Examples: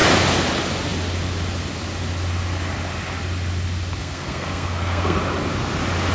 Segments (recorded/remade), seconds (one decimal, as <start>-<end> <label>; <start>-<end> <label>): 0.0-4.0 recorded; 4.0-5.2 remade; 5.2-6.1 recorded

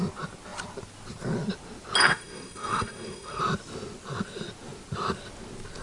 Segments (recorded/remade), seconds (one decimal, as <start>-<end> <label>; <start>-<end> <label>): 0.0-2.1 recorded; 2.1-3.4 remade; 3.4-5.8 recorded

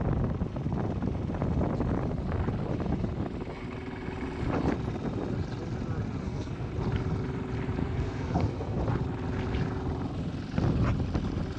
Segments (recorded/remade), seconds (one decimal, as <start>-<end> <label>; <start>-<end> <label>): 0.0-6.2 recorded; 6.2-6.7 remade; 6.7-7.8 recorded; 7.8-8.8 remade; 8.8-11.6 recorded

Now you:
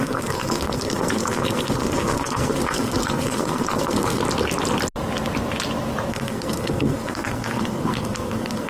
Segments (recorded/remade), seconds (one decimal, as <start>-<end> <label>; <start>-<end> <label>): 0.0-4.2 remade; 4.2-6.1 recorded; 6.1-8.7 remade